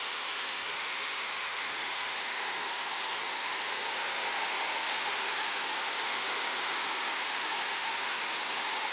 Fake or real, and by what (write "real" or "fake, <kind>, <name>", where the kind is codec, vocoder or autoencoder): fake, autoencoder, DAC-VAE